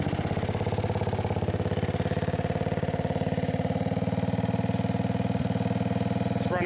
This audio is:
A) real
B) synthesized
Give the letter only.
A